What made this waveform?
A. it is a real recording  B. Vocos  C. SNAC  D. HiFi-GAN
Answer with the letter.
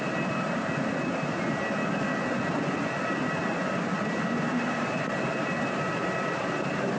A